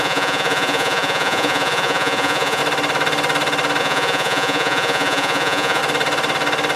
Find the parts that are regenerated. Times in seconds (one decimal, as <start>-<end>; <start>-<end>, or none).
0.0-2.6; 3.8-5.8